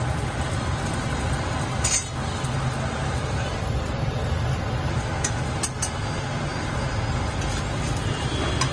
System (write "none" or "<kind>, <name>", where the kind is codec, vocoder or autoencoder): none